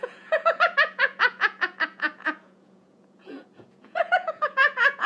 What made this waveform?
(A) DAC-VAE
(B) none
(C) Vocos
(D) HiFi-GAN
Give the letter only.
C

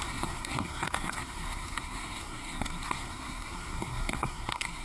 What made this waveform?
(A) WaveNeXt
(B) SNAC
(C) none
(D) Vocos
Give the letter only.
B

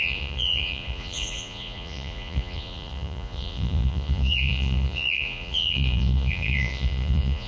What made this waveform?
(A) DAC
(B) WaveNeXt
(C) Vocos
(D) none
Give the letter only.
C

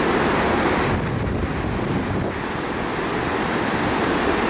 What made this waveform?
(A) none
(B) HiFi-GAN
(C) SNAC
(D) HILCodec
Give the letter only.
A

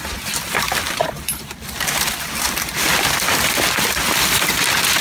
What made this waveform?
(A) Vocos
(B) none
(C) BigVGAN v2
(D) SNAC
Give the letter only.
C